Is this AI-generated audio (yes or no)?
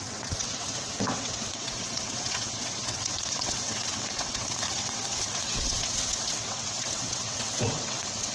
yes